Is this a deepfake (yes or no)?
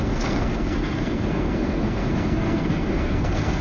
yes